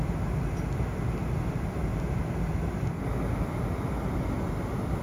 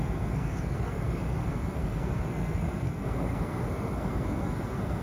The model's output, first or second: second